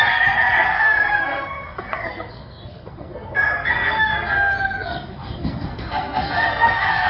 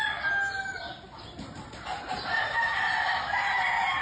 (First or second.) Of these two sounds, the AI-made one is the first